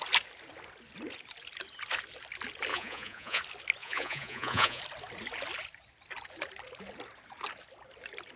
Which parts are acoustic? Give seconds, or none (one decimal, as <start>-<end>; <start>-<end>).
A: 0.0-2.7; 3.4-3.8; 4.8-8.4